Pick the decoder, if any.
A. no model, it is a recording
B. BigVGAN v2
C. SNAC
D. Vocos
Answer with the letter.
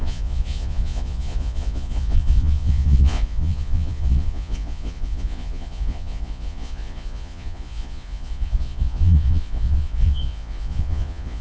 D